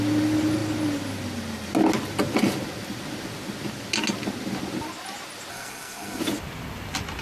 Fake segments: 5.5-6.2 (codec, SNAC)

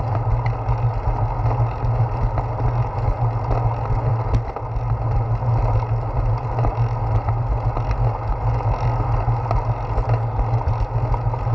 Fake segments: none

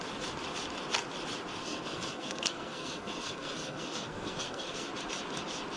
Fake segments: 1.6-4.9 (codec, SNAC)

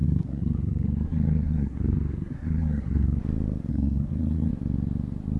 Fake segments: 0.0-3.2 (codec, SNAC); 3.7-4.5